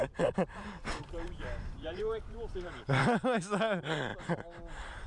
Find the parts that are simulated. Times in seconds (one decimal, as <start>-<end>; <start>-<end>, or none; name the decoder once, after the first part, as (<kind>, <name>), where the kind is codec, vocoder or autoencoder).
0.9-3.0 (vocoder, BigVGAN v2)